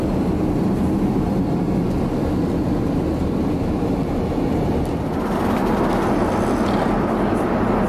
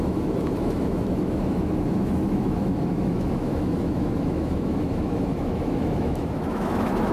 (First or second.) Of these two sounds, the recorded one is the first